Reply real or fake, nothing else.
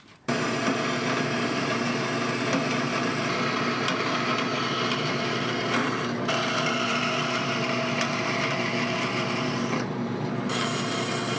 fake